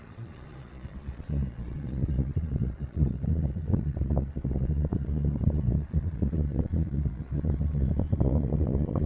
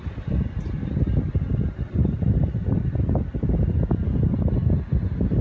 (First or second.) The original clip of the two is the second